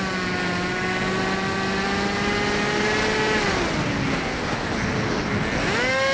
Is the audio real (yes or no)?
yes